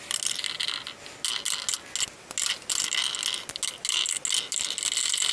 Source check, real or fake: real